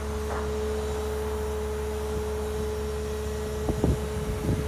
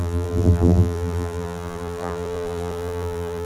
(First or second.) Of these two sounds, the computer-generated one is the second